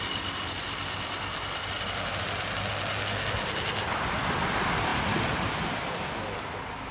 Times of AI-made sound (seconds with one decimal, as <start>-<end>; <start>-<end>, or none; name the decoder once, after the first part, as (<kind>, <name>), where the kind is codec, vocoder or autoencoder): none